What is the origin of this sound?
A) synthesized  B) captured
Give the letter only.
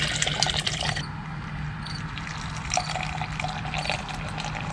B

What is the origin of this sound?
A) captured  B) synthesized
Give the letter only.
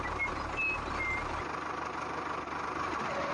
A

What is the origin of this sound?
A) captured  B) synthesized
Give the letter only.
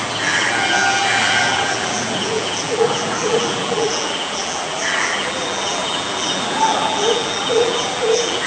B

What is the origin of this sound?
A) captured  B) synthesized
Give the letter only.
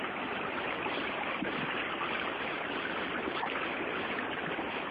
A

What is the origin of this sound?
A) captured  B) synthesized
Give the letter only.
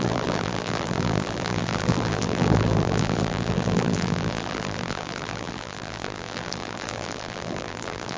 B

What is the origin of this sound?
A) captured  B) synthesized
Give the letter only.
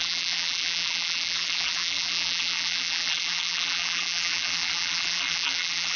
B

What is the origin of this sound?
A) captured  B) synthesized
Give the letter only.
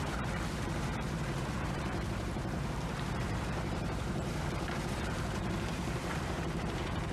B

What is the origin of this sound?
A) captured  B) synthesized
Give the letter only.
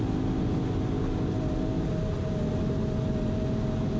A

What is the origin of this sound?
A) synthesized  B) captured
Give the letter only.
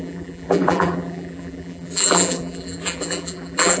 A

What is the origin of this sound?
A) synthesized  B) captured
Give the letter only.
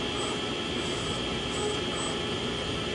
B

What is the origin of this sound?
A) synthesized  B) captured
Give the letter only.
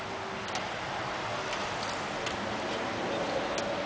B